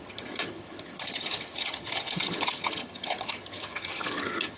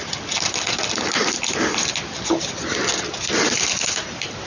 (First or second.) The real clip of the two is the second